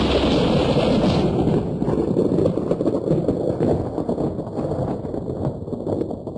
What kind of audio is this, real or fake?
real